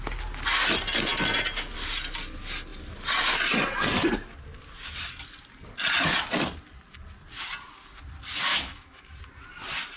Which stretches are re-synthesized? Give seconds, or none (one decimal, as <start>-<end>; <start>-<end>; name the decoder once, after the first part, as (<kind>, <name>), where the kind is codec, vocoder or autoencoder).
8.5-9.2 (autoencoder, DAC-VAE)